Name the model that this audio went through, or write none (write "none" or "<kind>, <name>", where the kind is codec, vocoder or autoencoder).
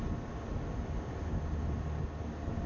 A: none